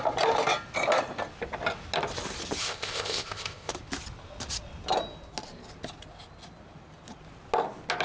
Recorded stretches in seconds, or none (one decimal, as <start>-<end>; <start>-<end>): 0.0-2.6; 3.7-8.0